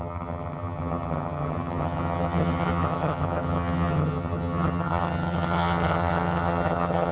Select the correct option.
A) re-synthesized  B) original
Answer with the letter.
A